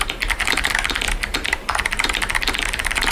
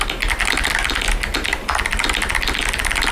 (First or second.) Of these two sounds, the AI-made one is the first